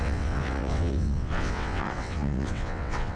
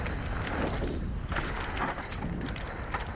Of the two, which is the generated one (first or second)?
first